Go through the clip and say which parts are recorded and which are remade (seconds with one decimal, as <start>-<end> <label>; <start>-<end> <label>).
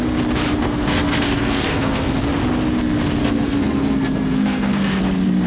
0.0-0.5 recorded; 0.5-2.2 remade; 2.2-3.2 recorded; 3.2-5.0 remade; 5.0-5.5 recorded